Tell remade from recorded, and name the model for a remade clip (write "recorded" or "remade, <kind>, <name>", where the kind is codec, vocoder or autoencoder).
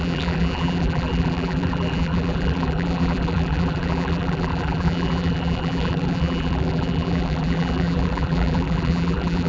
remade, vocoder, BigVGAN v2